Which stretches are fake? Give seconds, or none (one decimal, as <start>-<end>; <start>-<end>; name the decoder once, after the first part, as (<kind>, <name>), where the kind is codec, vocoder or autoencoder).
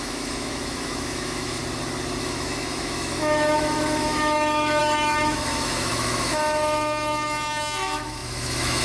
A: 0.0-1.6 (autoencoder, DAC-VAE); 2.2-8.8